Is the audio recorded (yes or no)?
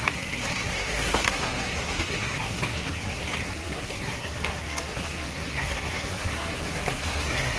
no